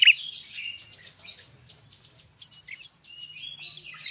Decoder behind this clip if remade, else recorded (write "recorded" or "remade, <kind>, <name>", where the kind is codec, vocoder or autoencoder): recorded